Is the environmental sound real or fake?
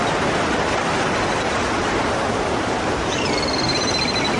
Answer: real